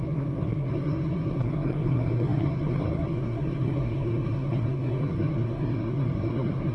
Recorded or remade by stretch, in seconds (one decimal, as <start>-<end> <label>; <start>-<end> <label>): 0.0-6.7 remade